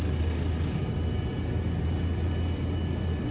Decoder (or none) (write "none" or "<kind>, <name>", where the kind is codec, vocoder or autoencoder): none